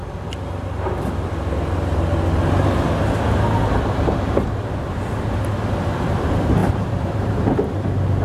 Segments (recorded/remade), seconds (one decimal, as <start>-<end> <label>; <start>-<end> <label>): 0.0-6.6 recorded; 6.6-7.3 remade; 7.3-8.2 recorded

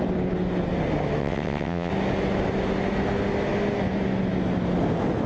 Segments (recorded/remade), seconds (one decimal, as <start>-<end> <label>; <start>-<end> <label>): 0.0-1.2 recorded; 1.2-1.9 remade; 1.9-5.3 recorded

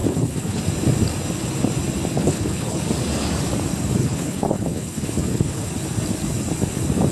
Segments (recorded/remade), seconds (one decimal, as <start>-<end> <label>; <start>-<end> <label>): 0.0-0.6 remade; 0.6-2.1 recorded; 2.1-2.8 remade; 2.8-4.0 recorded; 4.0-5.7 remade; 5.7-7.1 recorded

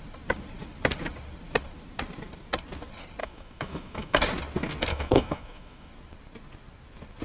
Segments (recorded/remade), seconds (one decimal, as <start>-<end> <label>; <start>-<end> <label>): 0.0-3.2 recorded; 3.2-4.2 remade; 4.2-4.9 recorded; 4.9-5.9 remade; 5.9-7.2 recorded